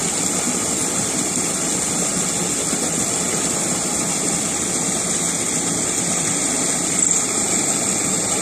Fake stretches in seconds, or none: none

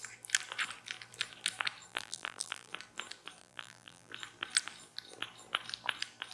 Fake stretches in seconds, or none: 1.9-2.7 (vocoder, BigVGAN v2); 3.4-4.1

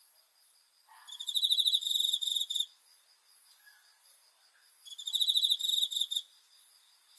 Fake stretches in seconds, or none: none

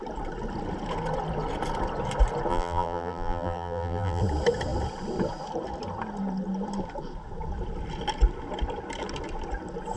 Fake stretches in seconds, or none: 2.5-4.2 (vocoder, BigVGAN v2)